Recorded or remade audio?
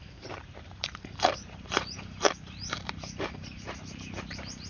remade